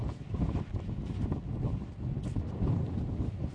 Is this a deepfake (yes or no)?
no